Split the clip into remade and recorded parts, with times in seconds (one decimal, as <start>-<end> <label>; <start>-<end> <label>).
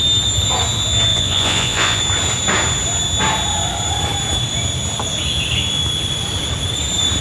0.0-1.1 recorded; 1.1-2.0 remade; 2.0-7.2 recorded